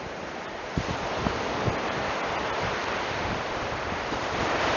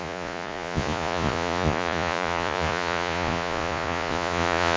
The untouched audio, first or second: first